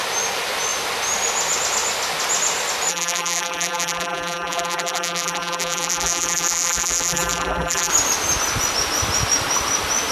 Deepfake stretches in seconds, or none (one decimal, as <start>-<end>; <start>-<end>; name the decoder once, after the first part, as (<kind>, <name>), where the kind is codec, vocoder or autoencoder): 2.9-7.9 (vocoder, BigVGAN v2)

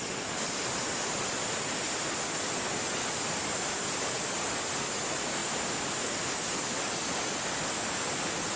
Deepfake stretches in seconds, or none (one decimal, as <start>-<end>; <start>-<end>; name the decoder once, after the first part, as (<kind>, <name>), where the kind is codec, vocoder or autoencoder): none

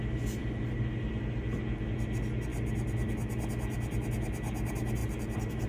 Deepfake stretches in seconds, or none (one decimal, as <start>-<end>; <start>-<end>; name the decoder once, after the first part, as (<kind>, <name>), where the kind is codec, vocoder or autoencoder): 5.0-5.7 (vocoder, BigVGAN v2)

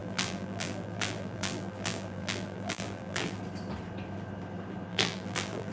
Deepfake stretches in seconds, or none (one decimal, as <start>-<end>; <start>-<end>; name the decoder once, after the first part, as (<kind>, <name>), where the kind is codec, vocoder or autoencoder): 0.0-3.4 (vocoder, BigVGAN v2); 4.9-5.7

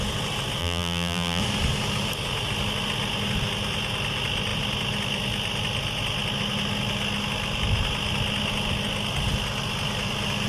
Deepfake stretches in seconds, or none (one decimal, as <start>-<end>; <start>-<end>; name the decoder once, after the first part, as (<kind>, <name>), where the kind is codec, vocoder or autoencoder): 0.6-1.4 (vocoder, BigVGAN v2)

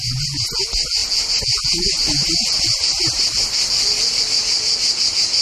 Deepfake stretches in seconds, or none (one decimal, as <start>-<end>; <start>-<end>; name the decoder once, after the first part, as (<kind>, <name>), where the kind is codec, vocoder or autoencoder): none